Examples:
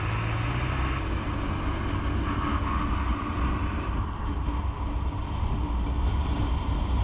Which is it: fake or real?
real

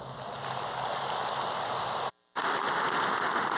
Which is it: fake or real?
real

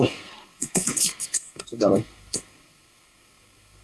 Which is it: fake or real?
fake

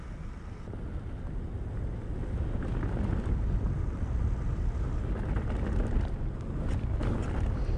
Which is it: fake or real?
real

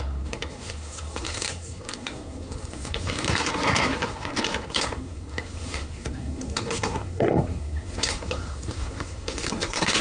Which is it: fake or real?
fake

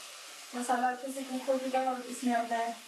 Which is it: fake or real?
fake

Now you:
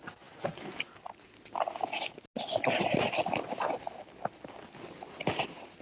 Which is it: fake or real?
real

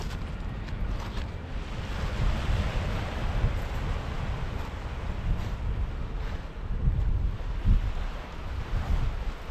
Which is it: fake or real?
real